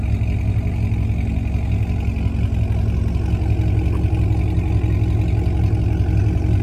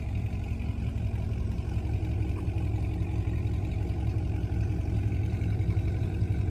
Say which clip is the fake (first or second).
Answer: second